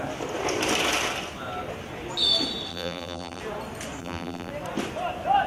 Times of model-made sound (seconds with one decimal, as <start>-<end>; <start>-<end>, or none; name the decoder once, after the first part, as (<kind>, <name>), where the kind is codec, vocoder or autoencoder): 2.7-3.4 (vocoder, BigVGAN v2); 4.0-4.5

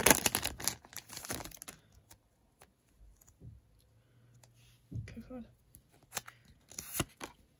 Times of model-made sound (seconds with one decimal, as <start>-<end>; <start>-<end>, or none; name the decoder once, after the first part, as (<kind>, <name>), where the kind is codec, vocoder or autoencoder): 0.9-1.4 (vocoder, BigVGAN v2)